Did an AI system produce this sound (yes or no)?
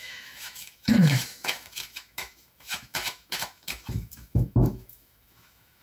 yes